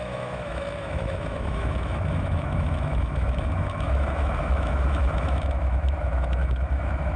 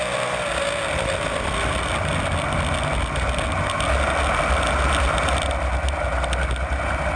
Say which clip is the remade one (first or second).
first